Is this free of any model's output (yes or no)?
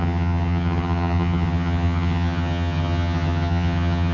no